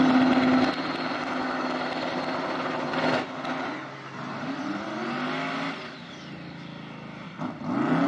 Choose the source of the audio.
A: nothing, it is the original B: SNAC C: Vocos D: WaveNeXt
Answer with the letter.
A